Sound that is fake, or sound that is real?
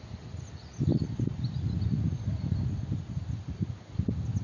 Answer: real